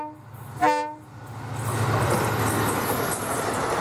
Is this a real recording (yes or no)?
yes